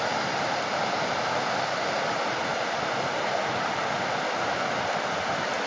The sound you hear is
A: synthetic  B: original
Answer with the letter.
B